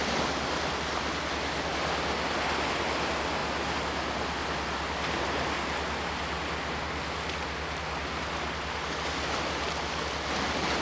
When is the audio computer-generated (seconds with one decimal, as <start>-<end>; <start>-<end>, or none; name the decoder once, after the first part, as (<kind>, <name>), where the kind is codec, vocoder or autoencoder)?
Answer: none